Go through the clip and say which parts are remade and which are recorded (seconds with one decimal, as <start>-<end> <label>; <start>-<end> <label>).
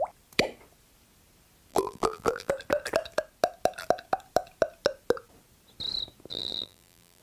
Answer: 0.0-1.7 recorded; 1.7-2.5 remade; 2.5-6.3 recorded; 6.3-7.2 remade